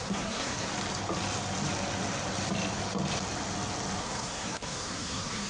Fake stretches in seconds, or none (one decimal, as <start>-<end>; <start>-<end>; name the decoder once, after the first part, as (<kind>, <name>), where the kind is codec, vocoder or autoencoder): 0.0-0.7 (codec, SNAC); 4.0-5.5

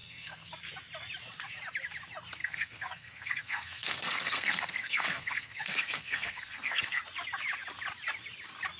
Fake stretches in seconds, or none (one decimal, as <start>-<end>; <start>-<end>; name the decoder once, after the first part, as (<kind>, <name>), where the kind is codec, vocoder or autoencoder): 0.0-0.5 (codec, SNAC); 2.4-7.0

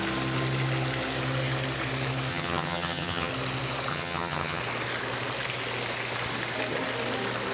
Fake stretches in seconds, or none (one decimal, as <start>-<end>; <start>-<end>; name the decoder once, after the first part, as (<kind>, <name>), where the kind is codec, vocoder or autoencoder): 2.3-3.3 (vocoder, HiFi-GAN); 3.9-4.6

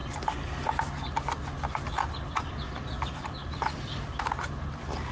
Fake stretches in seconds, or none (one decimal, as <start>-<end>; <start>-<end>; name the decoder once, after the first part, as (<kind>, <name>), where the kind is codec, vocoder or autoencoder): none

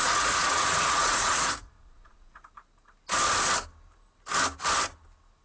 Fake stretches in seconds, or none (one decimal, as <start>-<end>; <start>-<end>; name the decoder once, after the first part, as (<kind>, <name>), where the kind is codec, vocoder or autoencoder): 0.0-2.4 (vocoder, Vocos)

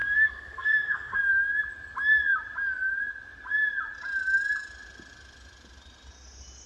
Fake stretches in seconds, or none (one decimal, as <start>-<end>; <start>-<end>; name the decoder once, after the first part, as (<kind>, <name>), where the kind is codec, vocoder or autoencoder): 0.0-1.2 (codec, SNAC)

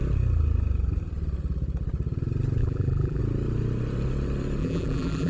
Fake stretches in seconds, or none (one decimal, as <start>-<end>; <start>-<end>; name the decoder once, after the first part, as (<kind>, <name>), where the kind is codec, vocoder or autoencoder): 2.6-3.2 (vocoder, BigVGAN v2); 4.6-5.3